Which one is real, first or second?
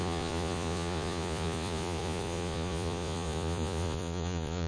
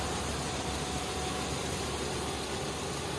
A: second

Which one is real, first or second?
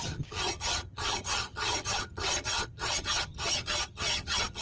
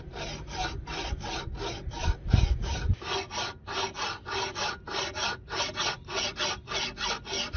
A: second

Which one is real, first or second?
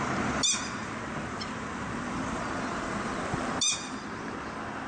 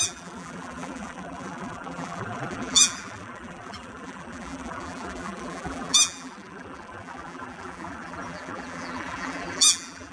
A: first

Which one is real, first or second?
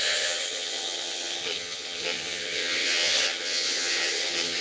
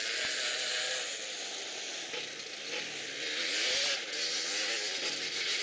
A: second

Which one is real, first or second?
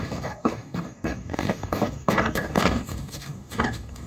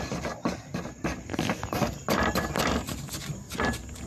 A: second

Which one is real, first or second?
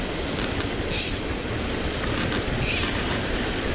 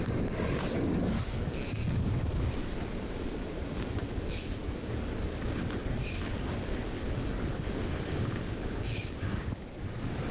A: first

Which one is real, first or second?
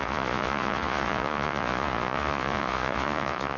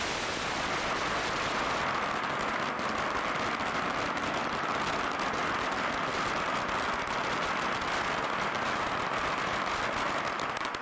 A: second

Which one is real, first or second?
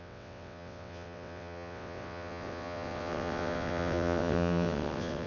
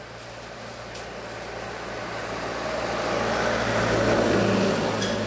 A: second